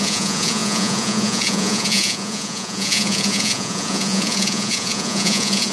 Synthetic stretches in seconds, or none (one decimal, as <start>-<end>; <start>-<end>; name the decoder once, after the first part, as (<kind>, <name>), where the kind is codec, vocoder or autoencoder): 0.0-5.7 (vocoder, Vocos)